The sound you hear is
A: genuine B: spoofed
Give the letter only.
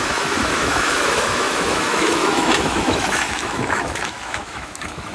B